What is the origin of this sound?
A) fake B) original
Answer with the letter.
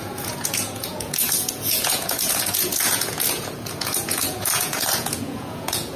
A